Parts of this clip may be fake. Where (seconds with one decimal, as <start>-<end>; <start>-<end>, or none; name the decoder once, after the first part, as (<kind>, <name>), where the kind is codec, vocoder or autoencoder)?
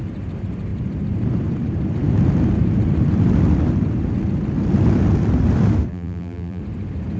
5.9-6.6 (vocoder, BigVGAN v2)